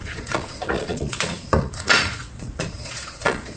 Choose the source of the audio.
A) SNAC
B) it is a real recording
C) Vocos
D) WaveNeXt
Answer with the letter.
C